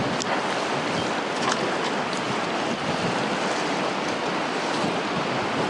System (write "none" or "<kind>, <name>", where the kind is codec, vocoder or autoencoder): none